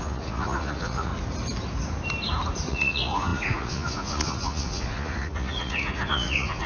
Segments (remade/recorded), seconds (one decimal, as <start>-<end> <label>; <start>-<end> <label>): 0.0-1.1 remade; 1.1-2.7 recorded; 2.7-6.7 remade